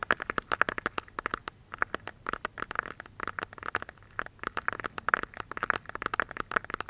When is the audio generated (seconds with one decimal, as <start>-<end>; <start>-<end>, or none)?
none